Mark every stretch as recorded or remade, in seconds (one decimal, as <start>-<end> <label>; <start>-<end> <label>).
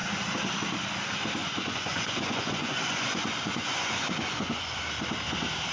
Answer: 0.0-1.4 recorded; 1.4-4.8 remade; 4.8-5.7 recorded